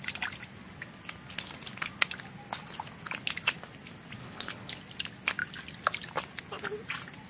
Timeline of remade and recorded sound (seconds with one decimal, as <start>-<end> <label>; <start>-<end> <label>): 0.0-4.2 recorded; 4.2-4.8 remade; 4.8-7.3 recorded